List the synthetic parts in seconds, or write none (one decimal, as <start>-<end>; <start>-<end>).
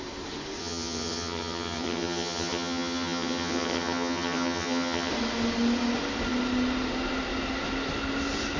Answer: 0.6-5.1